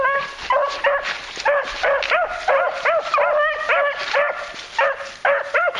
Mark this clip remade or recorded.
recorded